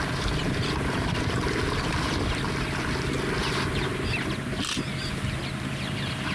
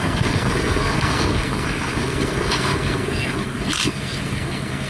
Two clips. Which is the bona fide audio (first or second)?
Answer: first